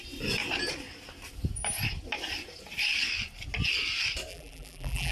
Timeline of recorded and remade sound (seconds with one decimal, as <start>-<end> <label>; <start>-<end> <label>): 0.0-4.3 recorded; 4.3-5.1 remade